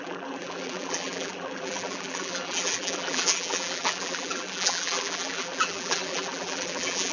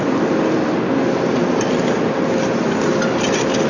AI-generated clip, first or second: first